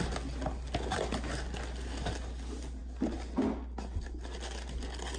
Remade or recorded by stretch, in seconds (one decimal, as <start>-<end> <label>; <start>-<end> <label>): 0.0-5.2 recorded